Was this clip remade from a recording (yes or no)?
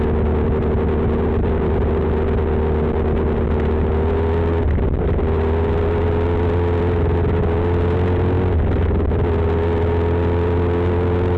no